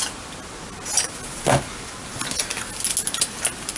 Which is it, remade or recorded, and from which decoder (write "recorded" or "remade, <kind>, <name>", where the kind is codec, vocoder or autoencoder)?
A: recorded